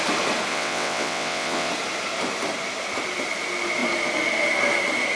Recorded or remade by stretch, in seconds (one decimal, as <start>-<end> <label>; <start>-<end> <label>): 0.0-0.5 recorded; 0.5-1.7 remade; 1.7-5.2 recorded